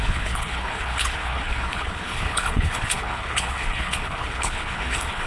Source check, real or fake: fake